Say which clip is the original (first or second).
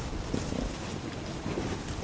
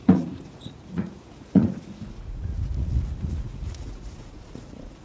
first